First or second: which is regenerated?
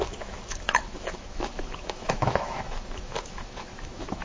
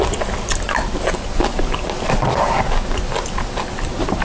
first